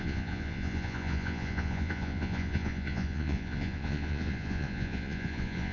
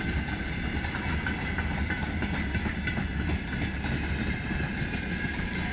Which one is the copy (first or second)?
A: first